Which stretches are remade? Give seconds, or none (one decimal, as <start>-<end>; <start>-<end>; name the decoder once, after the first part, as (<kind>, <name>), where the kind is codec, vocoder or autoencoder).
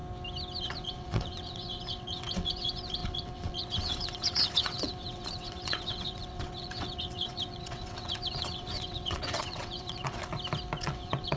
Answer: 0.6-10.2 (vocoder, WaveNeXt); 10.8-11.4